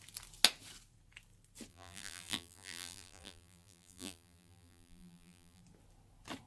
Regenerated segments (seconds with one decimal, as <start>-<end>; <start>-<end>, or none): 1.7-5.6